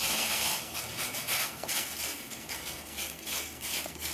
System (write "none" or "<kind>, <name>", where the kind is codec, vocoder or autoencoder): codec, SNAC